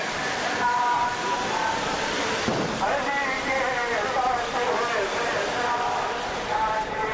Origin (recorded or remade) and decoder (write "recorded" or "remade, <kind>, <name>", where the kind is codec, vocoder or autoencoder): remade, vocoder, BigVGAN v2